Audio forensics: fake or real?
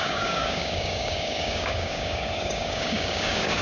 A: fake